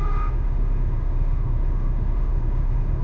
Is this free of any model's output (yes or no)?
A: no